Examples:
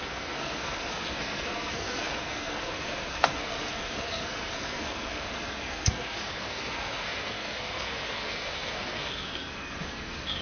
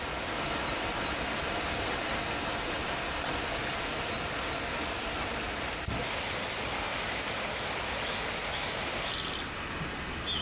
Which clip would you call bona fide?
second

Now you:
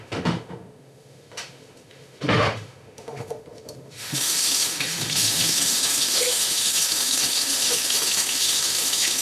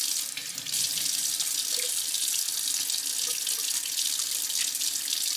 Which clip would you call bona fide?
second